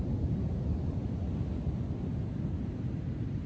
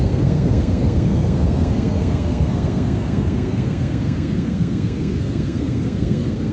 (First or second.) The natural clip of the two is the first